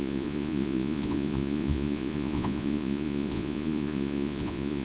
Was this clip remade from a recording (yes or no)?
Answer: yes